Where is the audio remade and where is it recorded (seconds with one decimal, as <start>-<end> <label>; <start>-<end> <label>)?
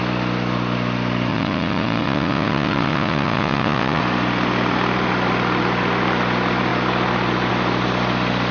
0.0-1.3 recorded; 1.3-4.0 remade; 4.0-8.5 recorded